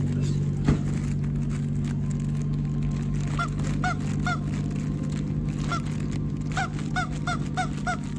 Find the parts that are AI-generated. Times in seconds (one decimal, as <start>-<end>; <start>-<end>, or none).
none